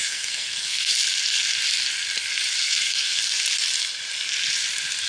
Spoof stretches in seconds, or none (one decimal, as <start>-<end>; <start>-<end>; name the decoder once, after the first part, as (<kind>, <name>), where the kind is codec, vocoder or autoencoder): 0.0-0.9 (codec, SNAC); 2.6-3.2